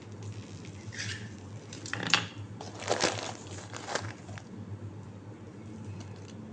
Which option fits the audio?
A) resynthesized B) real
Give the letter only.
B